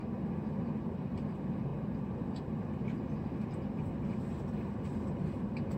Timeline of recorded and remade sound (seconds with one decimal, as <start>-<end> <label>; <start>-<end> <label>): 0.0-0.8 recorded; 0.8-1.7 remade; 1.7-5.2 recorded; 5.2-5.8 remade